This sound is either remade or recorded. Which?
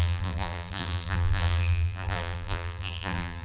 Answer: remade